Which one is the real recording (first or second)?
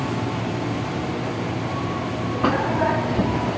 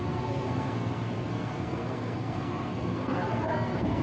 first